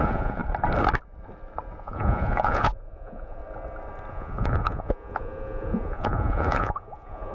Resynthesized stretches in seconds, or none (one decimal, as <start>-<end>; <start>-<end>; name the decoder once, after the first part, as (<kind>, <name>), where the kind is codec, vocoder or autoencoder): 0.0-0.4 (vocoder, Vocos); 1.8-3.4; 4.1-7.3